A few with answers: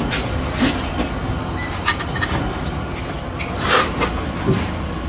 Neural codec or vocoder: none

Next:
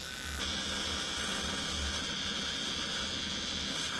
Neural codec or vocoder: none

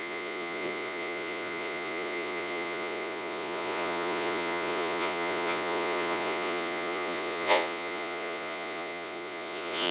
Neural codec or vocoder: vocoder, Vocos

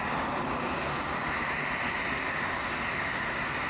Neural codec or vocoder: none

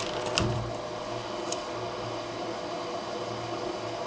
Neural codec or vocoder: none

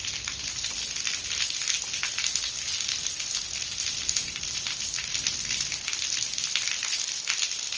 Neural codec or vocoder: none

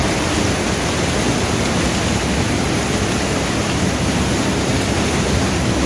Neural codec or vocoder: none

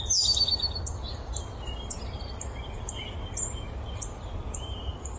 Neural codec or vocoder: none